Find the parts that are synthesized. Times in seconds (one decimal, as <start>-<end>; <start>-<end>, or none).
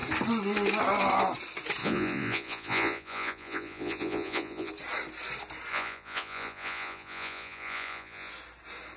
1.8-4.7; 5.7-8.3